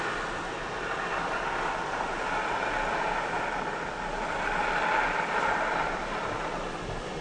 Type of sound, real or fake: real